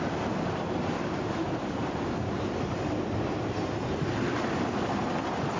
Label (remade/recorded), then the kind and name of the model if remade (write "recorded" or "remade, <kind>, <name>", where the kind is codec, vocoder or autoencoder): recorded